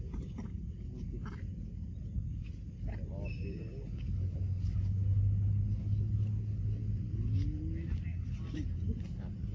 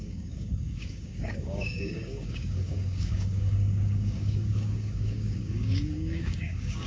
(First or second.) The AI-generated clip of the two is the second